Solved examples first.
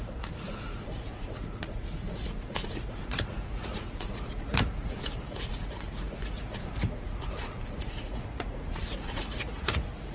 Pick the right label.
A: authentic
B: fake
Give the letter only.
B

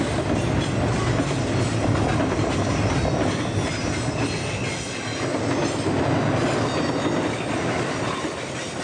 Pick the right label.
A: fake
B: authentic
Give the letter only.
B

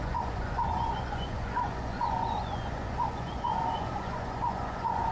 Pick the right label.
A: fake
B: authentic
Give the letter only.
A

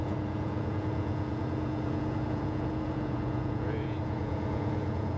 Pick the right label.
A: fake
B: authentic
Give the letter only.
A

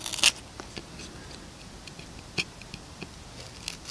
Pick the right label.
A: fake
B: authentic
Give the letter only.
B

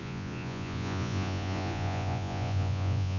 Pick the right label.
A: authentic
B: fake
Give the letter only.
B